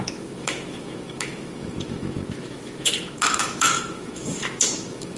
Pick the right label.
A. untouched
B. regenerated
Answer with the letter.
B